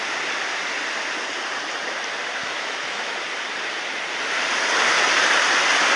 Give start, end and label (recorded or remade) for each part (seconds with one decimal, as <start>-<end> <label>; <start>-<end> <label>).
0.0-2.4 recorded; 2.4-3.1 remade; 3.1-6.0 recorded